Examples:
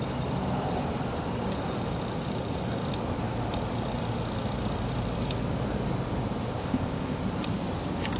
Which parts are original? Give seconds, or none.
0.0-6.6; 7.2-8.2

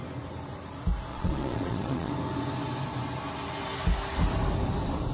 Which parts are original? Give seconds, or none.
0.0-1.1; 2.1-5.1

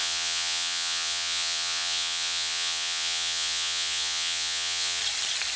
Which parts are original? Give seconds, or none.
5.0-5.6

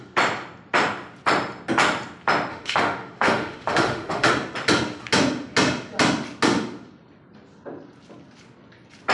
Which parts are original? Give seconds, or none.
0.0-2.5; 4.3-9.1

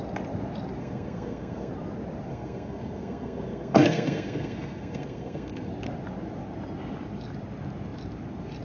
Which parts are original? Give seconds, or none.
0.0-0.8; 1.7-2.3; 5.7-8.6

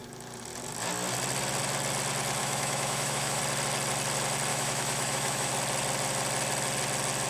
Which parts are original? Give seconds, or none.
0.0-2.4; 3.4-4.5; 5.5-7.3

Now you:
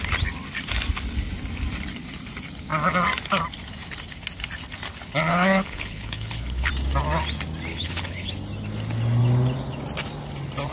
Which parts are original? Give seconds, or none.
0.0-5.3; 6.7-7.7; 8.3-10.7